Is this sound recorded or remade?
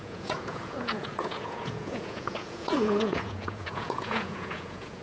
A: remade